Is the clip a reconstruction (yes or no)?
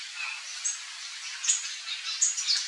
no